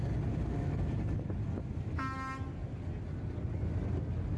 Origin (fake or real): real